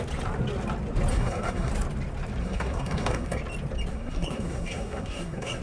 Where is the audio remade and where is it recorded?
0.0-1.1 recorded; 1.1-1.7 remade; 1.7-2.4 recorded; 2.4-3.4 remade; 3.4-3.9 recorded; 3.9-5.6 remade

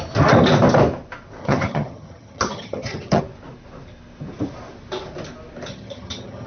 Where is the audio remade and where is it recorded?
0.0-1.4 recorded; 1.4-3.2 remade; 3.2-5.7 recorded; 5.7-6.5 remade

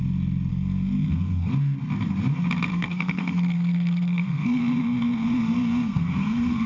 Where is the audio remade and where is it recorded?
0.0-0.5 recorded; 0.5-1.5 remade; 1.5-2.7 recorded; 2.7-6.7 remade

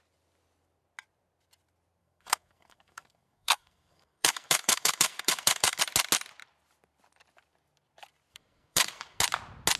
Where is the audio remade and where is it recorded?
0.0-2.0 recorded; 2.0-5.8 remade; 5.8-8.3 recorded; 8.3-9.2 remade; 9.2-9.8 recorded

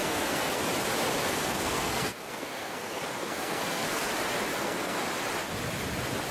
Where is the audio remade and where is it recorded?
0.0-0.6 remade; 0.6-1.2 recorded; 1.2-4.1 remade; 4.1-4.5 recorded; 4.5-5.0 remade; 5.0-6.3 recorded

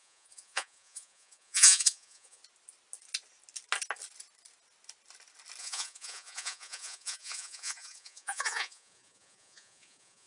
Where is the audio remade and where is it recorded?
0.0-2.4 remade; 2.4-5.6 recorded; 5.6-10.3 remade

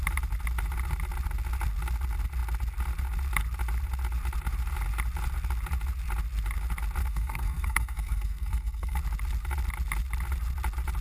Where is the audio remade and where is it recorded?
0.0-7.0 recorded; 7.0-9.0 remade; 9.0-11.0 recorded

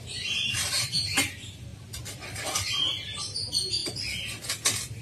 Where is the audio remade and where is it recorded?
0.0-1.7 remade; 1.7-2.7 recorded; 2.7-3.8 remade; 3.8-5.0 recorded